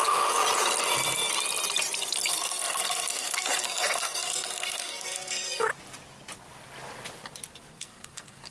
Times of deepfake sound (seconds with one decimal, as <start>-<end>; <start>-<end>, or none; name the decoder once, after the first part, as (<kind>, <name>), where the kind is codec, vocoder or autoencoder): 0.0-0.4 (codec, SNAC); 2.3-5.7; 7.7-8.5